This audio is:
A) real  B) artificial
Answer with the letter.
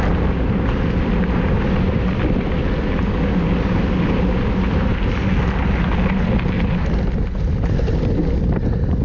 A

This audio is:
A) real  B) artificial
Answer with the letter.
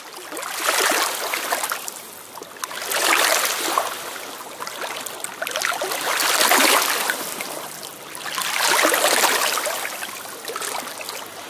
A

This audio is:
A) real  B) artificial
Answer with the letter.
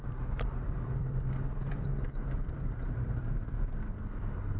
B